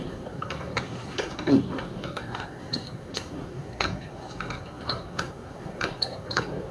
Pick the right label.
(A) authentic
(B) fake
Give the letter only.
B